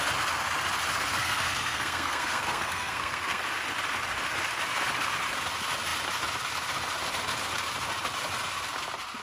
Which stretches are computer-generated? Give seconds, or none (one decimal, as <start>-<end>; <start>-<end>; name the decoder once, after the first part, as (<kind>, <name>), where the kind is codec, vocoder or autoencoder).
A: 1.2-3.4 (codec, SNAC)